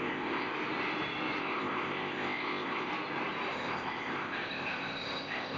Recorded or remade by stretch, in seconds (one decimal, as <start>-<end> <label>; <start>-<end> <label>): 0.0-0.5 remade; 0.5-1.4 recorded; 1.4-2.9 remade; 2.9-3.5 recorded; 3.5-5.6 remade